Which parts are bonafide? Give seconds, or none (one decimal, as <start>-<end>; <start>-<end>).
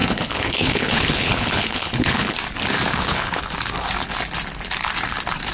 2.3-2.9; 3.4-5.5